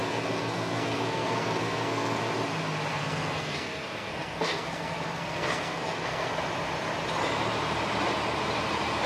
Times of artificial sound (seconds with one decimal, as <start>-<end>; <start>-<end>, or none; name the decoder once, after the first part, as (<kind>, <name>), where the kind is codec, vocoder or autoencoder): 0.0-2.2 (codec, SNAC); 2.9-6.3

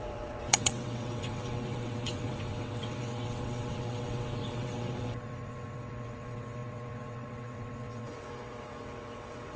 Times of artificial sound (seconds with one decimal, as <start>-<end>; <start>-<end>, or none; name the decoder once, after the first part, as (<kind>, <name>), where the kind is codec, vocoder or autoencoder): 0.0-9.6 (vocoder, WaveNeXt)

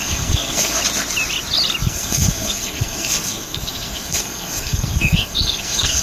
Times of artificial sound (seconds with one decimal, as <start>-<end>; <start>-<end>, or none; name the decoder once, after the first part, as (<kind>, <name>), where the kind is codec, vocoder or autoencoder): 0.0-0.8 (codec, SNAC); 1.8-6.0

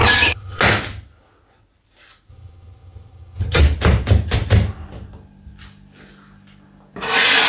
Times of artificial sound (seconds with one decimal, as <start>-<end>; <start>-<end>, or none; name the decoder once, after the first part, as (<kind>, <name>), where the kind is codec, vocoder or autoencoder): 0.0-0.6 (vocoder, HiFi-GAN); 2.3-3.6

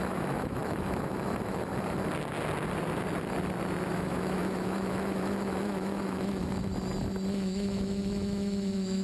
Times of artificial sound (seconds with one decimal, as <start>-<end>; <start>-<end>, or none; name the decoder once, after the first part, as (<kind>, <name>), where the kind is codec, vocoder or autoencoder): 0.0-1.7 (autoencoder, DAC-VAE); 3.9-6.7; 7.3-9.0

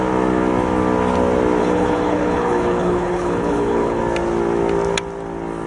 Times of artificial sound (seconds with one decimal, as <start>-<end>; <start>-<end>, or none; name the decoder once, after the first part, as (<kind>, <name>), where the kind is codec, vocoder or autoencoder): 1.6-4.0 (codec, HILCodec)